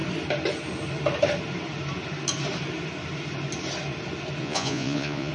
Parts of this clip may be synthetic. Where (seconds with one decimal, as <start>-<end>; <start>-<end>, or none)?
4.4-5.3